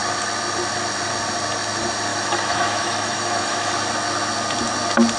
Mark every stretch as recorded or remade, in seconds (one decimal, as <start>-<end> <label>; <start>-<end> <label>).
0.0-2.1 recorded; 2.1-3.7 remade; 3.7-5.2 recorded

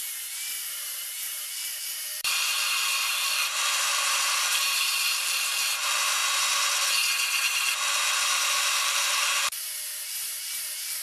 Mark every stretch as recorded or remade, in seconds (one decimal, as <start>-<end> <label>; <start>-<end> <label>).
0.0-6.2 remade; 6.2-8.5 recorded; 8.5-11.0 remade

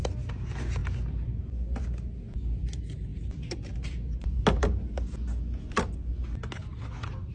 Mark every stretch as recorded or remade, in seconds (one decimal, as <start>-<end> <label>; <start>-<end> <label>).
0.0-7.3 recorded

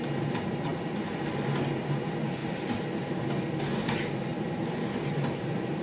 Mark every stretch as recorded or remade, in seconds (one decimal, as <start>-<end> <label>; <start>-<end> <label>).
0.0-0.7 recorded; 0.7-1.3 remade; 1.3-4.3 recorded; 4.3-5.8 remade